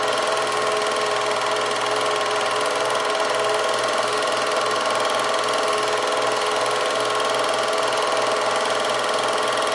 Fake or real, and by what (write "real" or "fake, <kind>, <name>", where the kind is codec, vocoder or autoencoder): real